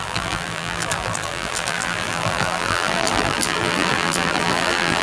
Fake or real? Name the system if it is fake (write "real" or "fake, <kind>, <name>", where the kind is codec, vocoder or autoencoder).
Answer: fake, vocoder, BigVGAN v2